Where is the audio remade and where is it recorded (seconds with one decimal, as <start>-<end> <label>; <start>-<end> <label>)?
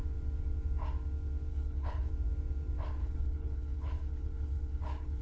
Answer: 0.0-1.5 recorded; 1.5-2.1 remade; 2.1-3.0 recorded; 3.0-5.2 remade